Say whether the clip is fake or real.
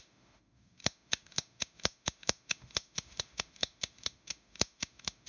fake